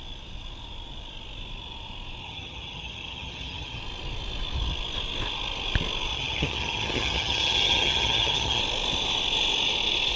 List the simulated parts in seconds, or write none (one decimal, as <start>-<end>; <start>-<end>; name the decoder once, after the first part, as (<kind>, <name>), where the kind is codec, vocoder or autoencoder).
2.2-3.8 (vocoder, HiFi-GAN); 6.1-8.6